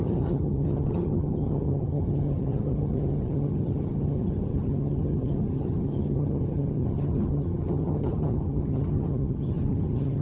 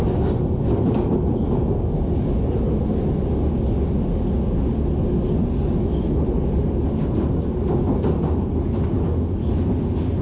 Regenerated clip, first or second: first